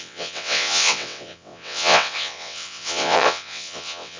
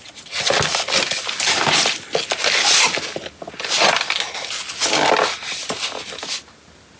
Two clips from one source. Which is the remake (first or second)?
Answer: first